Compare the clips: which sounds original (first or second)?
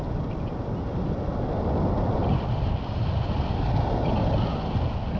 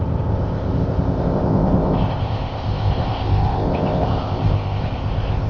first